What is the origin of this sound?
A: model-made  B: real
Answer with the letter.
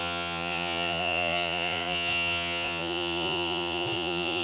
A